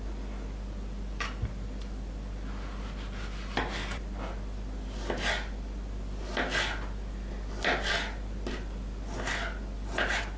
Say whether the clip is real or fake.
real